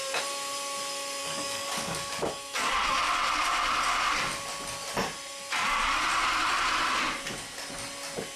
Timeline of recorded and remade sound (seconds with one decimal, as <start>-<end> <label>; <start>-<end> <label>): 0.0-1.2 recorded; 1.2-2.3 remade; 2.3-8.4 recorded